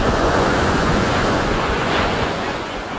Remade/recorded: remade